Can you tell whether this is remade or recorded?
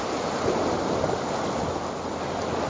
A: recorded